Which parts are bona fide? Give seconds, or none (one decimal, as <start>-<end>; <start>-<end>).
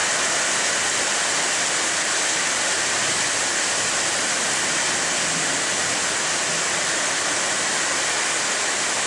0.0-9.1